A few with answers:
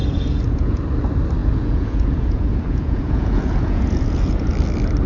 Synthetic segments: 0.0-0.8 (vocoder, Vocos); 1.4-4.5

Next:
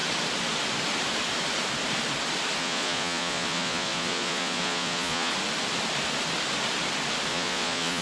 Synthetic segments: 2.6-5.3 (vocoder, Vocos); 7.3-8.0

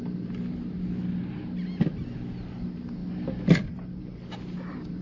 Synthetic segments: none

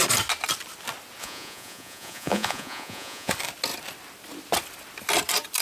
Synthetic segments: 1.2-3.3 (vocoder, Vocos)

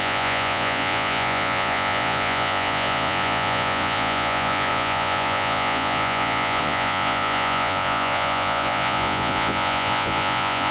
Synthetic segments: 0.0-10.7 (vocoder, Vocos)

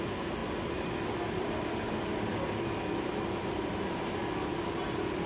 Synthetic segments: none

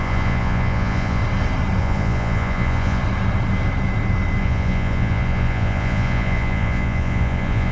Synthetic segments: 0.0-1.2 (vocoder, Vocos); 1.8-3.0; 4.4-7.7